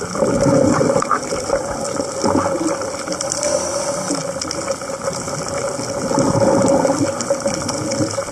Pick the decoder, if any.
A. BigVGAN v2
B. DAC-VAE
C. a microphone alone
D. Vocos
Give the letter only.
C